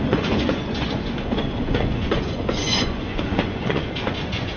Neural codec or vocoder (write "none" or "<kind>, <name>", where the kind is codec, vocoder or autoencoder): vocoder, Vocos